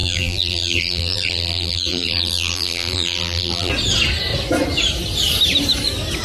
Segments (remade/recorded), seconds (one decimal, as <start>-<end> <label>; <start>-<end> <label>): 0.0-3.7 remade; 3.7-6.2 recorded